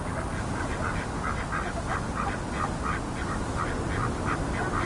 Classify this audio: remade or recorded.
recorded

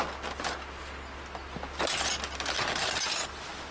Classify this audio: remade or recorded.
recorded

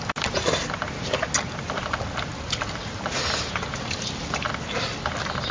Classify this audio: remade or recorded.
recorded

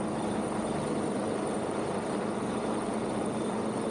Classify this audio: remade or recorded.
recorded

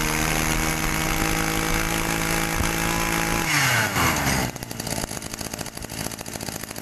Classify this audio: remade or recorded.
recorded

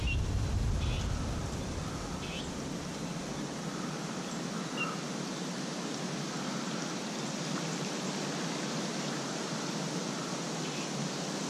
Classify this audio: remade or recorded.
recorded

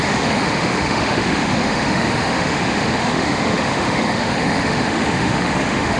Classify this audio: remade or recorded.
remade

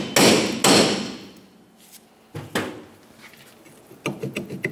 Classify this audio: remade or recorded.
recorded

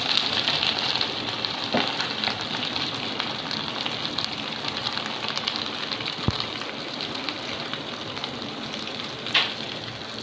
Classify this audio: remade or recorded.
recorded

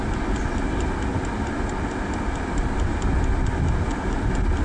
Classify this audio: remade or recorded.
recorded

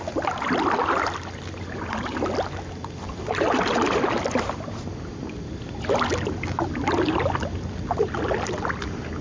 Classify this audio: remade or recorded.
recorded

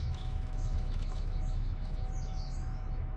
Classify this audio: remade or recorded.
remade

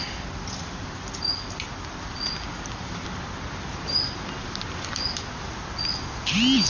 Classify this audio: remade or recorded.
recorded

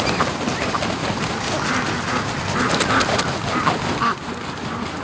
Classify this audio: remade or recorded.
recorded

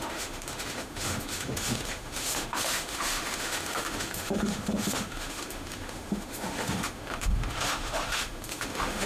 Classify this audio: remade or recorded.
remade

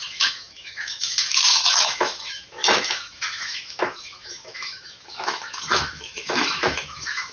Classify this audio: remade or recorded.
remade